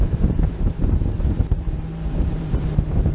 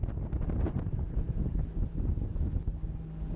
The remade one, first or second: first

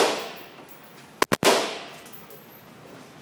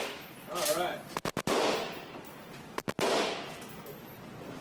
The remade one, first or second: second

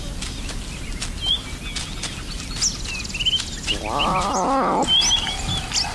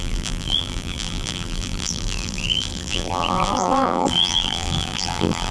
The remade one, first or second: second